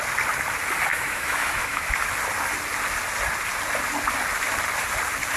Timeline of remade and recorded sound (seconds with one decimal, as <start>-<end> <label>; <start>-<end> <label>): 0.0-0.9 recorded; 0.9-2.1 remade; 2.1-5.4 recorded